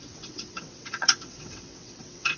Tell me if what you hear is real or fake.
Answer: fake